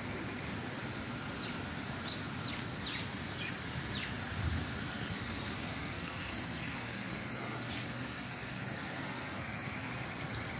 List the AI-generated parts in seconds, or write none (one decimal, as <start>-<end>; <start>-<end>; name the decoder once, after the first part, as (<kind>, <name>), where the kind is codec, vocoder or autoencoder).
4.9-9.9 (codec, SNAC)